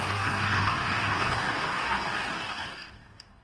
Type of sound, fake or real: fake